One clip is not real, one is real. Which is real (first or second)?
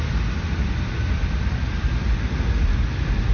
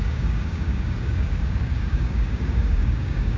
first